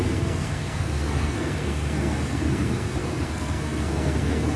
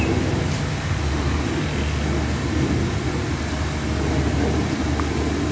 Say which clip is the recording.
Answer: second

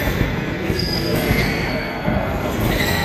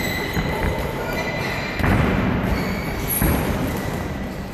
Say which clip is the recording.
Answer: second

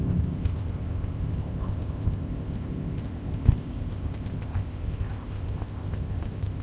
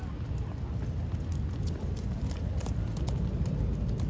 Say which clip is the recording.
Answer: second